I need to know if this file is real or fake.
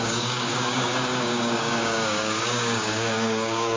fake